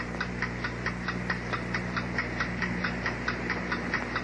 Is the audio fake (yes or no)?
no